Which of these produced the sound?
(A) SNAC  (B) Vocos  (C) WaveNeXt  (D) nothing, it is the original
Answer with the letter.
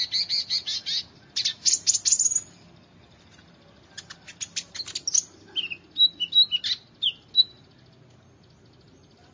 D